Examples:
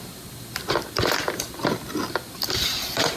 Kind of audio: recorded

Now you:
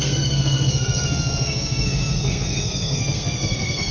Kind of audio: remade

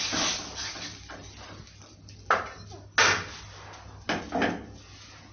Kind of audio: recorded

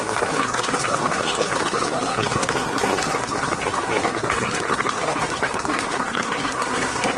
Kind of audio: remade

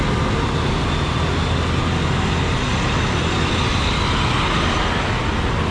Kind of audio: recorded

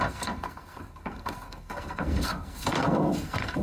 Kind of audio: remade